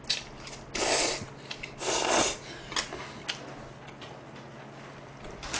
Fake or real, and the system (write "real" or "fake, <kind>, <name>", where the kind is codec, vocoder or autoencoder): real